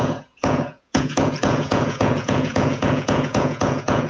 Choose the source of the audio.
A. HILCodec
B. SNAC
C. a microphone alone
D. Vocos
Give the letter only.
D